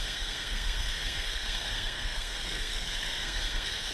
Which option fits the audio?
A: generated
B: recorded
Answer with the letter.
A